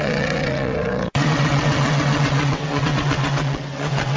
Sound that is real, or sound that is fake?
fake